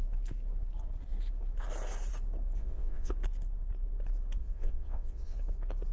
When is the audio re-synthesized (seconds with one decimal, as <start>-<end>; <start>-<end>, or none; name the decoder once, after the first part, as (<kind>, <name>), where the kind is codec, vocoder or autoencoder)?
2.6-3.1 (vocoder, WaveNeXt); 4.4-5.4